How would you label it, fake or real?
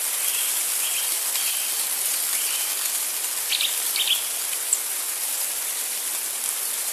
real